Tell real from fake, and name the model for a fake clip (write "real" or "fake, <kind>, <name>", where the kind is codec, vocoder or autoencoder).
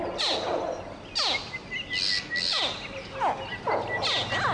real